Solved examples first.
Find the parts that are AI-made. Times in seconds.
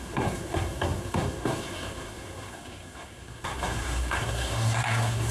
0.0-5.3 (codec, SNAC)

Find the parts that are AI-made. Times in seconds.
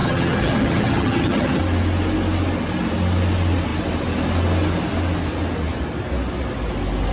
0.0-1.6 (vocoder, HiFi-GAN)